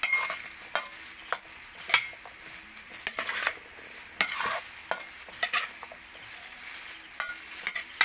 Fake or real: real